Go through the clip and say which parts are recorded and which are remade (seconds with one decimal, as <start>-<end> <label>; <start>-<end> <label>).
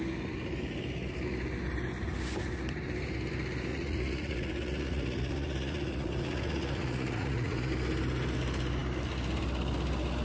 0.0-3.7 recorded; 3.7-7.7 remade; 7.7-10.2 recorded